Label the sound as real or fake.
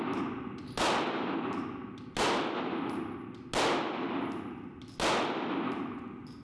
real